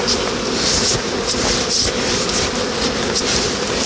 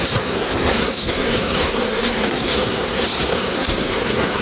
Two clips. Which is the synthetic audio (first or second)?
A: second